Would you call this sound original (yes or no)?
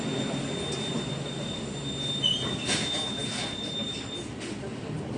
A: yes